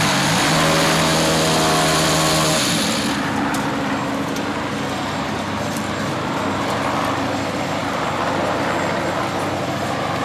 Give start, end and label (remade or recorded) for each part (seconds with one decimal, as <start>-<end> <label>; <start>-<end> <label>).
0.0-10.2 recorded